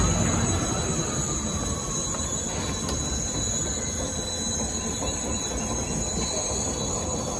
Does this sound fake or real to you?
real